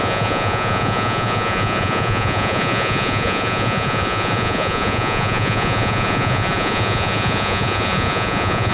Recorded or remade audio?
remade